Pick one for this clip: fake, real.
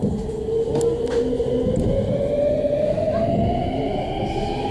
real